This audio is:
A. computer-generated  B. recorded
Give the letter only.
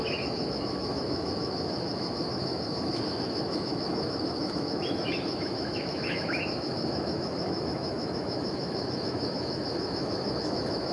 A